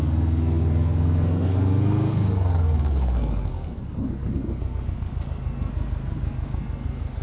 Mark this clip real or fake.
fake